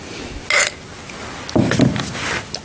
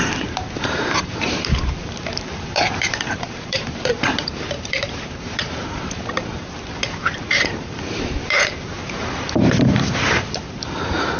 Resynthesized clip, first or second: second